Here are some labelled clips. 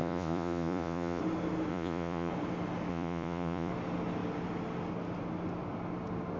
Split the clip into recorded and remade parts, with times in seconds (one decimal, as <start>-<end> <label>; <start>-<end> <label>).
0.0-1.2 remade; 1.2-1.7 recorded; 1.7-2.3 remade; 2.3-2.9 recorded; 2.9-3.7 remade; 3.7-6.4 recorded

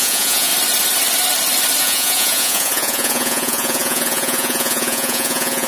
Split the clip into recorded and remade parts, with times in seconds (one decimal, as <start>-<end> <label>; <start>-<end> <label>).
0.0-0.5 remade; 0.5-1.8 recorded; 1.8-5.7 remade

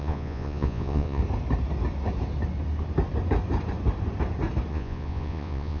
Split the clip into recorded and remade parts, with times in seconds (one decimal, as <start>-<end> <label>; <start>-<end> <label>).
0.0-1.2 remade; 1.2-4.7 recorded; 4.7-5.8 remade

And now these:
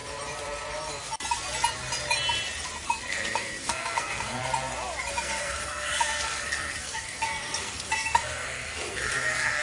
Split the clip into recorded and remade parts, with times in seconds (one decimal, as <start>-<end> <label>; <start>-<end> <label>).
0.0-3.1 recorded; 3.1-4.4 remade; 4.4-5.1 recorded; 5.1-9.6 remade

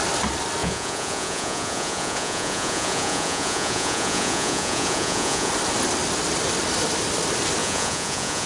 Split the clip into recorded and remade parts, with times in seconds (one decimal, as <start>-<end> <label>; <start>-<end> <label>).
0.0-0.6 recorded; 0.6-5.5 remade; 5.5-7.6 recorded; 7.6-8.5 remade

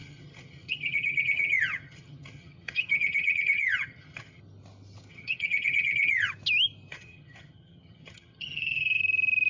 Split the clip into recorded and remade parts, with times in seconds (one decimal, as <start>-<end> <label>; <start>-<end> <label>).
0.0-4.4 remade; 4.4-5.1 recorded; 5.1-6.3 remade; 6.3-6.9 recorded; 6.9-9.0 remade; 9.0-9.5 recorded

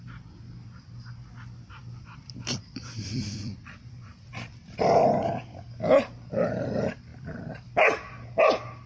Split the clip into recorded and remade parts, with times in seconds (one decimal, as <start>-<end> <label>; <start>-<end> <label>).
0.0-1.8 recorded; 1.8-4.6 remade; 4.6-7.1 recorded; 7.1-7.7 remade; 7.7-8.9 recorded